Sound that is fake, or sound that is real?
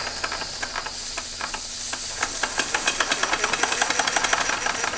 real